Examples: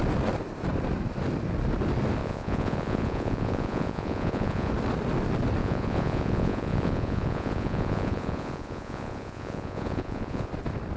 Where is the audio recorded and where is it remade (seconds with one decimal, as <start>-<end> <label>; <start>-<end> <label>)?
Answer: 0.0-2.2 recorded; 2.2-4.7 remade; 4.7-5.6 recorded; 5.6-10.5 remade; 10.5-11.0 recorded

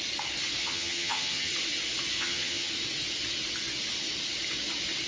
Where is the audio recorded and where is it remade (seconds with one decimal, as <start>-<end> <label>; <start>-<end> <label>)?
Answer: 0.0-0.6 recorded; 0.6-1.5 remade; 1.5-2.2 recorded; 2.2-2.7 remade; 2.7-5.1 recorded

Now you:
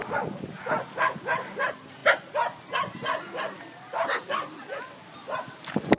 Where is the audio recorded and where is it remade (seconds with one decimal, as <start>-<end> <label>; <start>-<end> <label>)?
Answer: 0.0-6.0 recorded

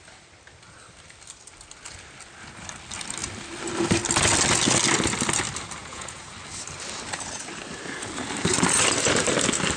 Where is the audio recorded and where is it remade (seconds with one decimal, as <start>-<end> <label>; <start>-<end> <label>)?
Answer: 0.0-5.8 recorded; 5.8-6.3 remade; 6.3-9.8 recorded

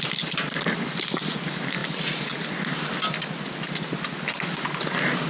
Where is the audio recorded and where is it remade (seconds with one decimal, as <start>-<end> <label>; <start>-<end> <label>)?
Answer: 0.0-5.3 recorded

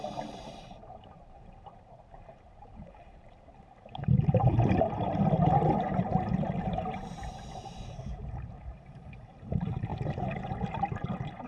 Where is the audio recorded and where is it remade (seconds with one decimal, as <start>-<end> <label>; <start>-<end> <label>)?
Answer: 0.0-9.9 remade; 9.9-10.5 recorded; 10.5-11.5 remade

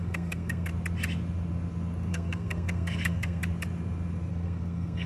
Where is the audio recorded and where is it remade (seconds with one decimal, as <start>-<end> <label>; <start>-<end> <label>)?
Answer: 0.0-0.7 remade; 0.7-2.1 recorded; 2.1-3.4 remade; 3.4-4.3 recorded; 4.3-5.1 remade

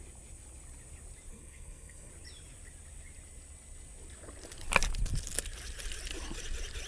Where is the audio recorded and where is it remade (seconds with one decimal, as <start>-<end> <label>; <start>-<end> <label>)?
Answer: 0.0-1.3 recorded; 1.3-2.1 remade; 2.1-6.9 recorded